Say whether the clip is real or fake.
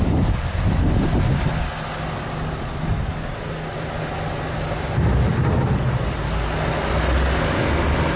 real